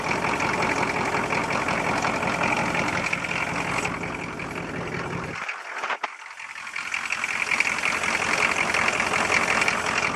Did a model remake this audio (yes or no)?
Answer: no